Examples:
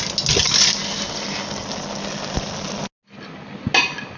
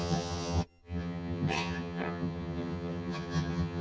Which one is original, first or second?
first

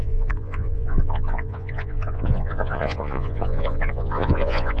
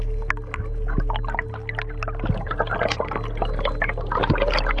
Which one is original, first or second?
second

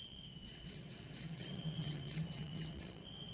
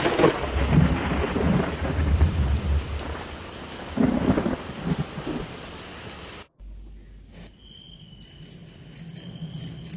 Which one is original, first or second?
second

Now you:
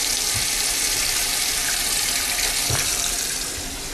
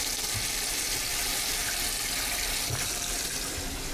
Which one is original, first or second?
second